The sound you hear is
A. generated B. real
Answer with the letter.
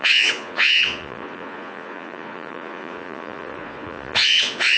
A